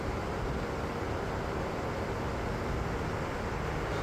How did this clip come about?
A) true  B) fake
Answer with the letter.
A